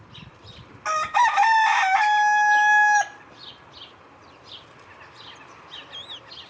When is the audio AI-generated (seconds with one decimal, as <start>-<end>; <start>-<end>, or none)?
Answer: none